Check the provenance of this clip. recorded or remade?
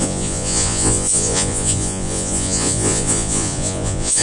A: remade